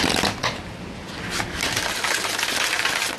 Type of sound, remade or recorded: recorded